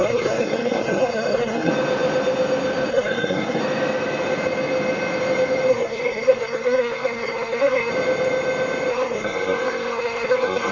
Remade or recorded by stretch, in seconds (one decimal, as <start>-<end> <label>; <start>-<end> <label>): 0.0-1.7 remade; 1.7-2.9 recorded; 2.9-3.6 remade; 3.6-5.7 recorded; 5.7-7.9 remade; 7.9-8.9 recorded; 8.9-10.7 remade